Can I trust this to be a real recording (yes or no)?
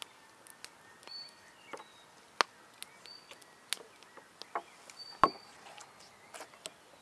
yes